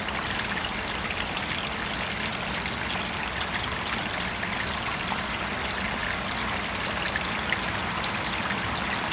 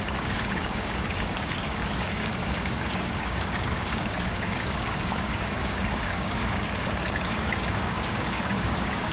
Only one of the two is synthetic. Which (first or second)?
second